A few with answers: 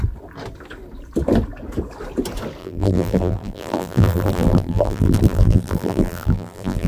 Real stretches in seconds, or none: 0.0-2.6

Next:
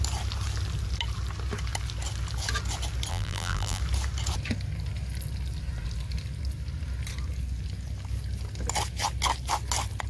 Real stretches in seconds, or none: 0.0-3.1; 3.8-10.1

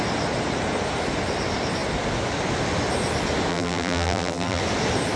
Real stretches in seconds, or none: 0.0-3.5; 4.6-5.2

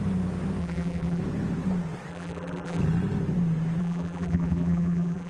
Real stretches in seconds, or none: 0.0-0.6; 1.2-2.1; 2.8-3.8